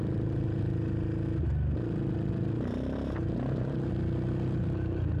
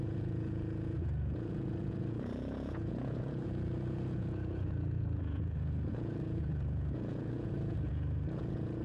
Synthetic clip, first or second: second